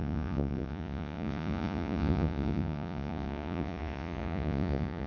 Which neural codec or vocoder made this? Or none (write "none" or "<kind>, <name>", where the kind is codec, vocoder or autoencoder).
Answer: vocoder, Vocos